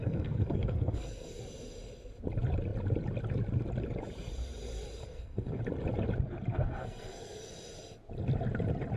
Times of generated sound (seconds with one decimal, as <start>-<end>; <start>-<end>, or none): 0.0-1.4; 5.0-5.6; 6.5-7.5